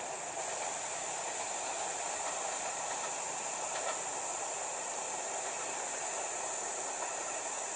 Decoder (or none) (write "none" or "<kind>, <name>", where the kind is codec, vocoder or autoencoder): vocoder, BigVGAN v2